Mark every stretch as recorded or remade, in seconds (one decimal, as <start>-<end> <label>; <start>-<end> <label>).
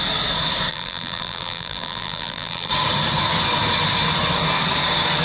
0.0-0.7 recorded; 0.7-2.7 remade; 2.7-5.2 recorded